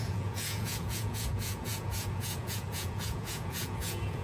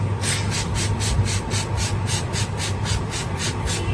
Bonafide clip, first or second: second